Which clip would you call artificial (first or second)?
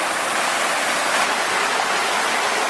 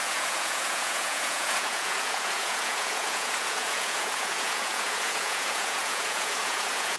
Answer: second